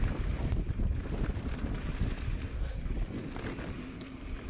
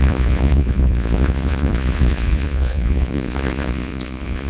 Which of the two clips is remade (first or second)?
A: second